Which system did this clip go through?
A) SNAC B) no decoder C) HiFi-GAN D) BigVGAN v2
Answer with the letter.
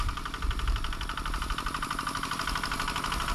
B